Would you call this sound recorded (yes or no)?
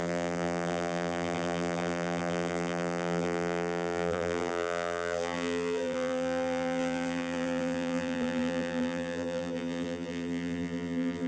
no